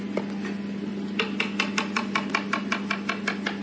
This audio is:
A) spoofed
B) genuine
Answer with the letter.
B